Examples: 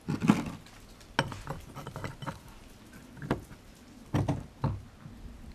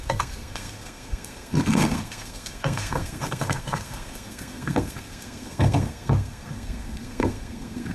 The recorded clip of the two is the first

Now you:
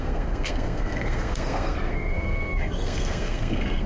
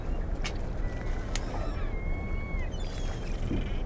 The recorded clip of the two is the second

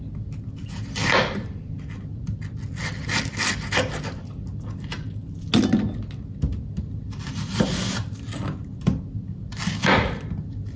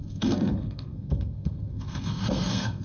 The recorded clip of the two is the first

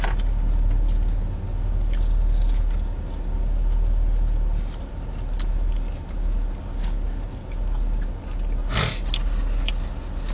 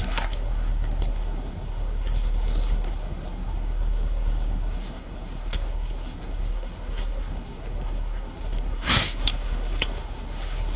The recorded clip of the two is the first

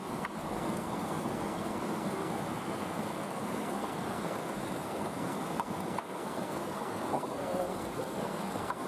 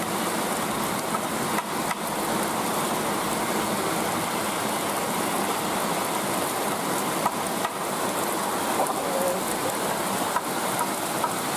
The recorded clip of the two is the second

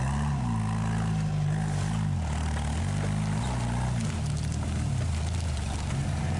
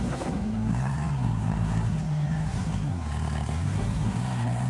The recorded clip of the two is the first